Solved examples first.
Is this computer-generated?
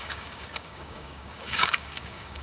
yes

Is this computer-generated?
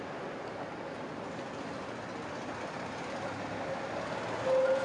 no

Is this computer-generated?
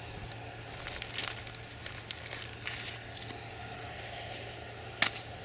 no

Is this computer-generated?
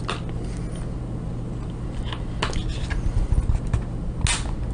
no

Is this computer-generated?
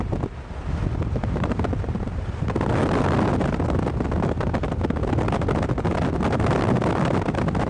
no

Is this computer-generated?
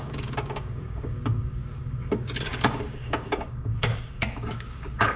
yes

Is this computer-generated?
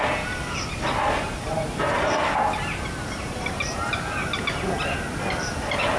no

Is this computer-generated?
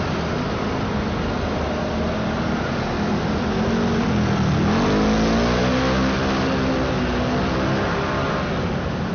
no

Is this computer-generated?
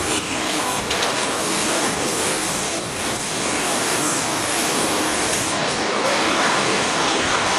yes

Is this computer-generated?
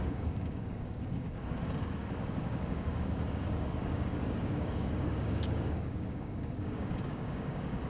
yes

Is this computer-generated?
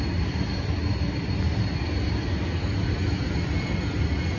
no